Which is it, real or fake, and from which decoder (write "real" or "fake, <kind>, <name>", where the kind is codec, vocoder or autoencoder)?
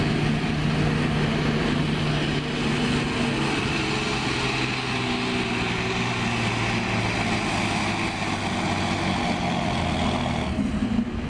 real